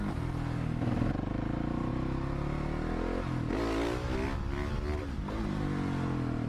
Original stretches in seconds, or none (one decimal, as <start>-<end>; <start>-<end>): 0.0-6.5